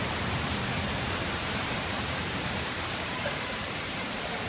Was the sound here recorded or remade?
remade